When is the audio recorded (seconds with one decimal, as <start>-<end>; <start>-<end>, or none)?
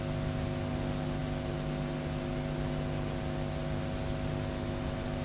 0.0-5.2